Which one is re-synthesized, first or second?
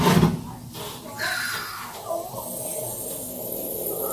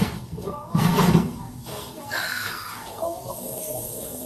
second